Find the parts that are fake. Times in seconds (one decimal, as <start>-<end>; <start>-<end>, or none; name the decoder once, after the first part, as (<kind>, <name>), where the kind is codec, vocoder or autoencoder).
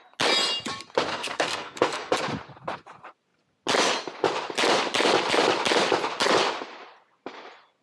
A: 1.1-2.1 (codec, SNAC)